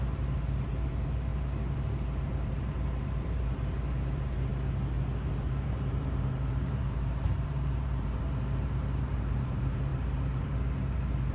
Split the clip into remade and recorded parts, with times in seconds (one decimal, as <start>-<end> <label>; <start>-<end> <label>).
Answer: 0.0-4.5 remade; 4.5-5.3 recorded; 5.3-11.3 remade